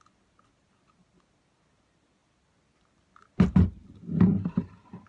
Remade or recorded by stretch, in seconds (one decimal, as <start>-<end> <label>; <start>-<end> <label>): 0.0-5.1 recorded